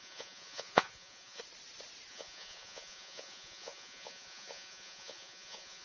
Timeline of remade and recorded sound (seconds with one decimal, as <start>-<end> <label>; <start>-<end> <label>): 0.0-1.4 remade; 1.4-2.1 recorded; 2.1-5.8 remade